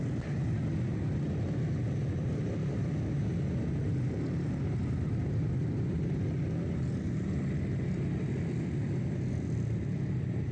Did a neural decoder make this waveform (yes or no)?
no